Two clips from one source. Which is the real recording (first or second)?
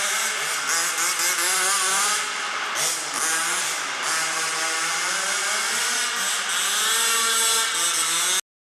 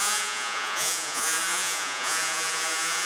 first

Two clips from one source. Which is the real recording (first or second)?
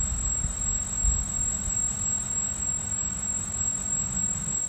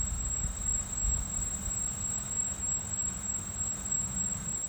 first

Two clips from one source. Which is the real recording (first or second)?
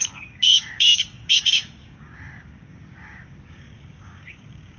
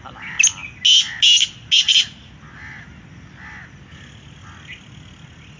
second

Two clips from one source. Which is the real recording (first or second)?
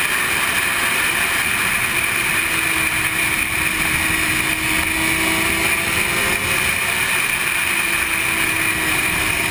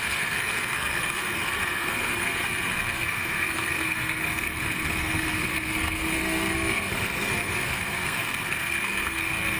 first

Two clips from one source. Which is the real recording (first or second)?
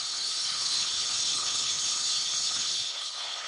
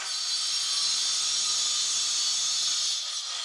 second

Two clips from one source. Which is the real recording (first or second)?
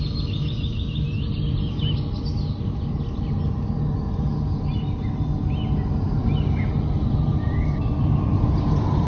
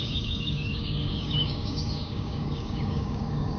first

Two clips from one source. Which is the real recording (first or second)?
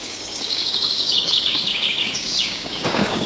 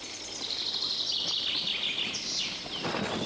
second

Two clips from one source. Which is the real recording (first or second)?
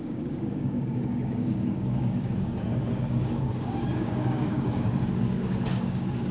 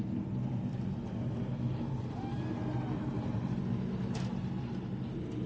second